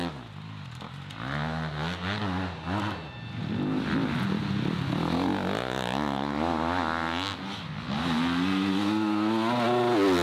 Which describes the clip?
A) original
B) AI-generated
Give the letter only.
A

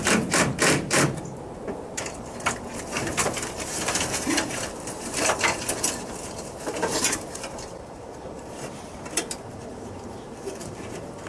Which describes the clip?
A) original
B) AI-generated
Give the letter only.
B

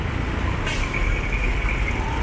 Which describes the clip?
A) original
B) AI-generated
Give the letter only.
A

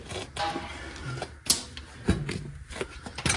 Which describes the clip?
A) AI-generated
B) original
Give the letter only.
B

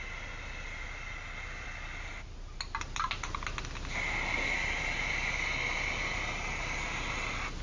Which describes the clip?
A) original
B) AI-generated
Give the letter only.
A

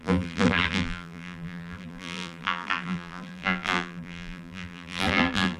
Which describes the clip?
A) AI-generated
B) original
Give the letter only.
A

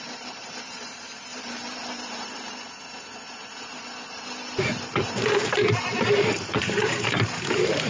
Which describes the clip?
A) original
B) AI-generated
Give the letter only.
B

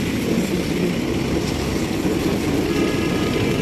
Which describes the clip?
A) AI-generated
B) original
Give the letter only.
A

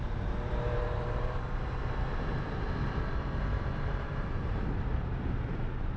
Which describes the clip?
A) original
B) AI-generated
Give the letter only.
B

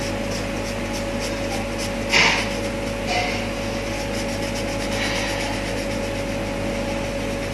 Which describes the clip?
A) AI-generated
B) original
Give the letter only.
B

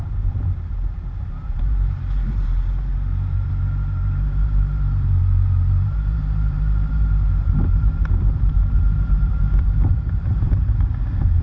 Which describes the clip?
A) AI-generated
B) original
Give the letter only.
A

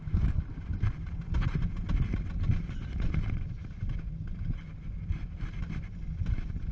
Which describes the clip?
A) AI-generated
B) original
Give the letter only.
B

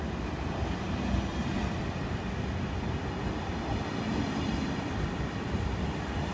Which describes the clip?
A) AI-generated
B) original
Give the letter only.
B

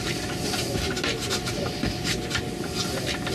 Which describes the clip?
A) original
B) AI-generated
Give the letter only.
A